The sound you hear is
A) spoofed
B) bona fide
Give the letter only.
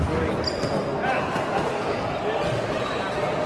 B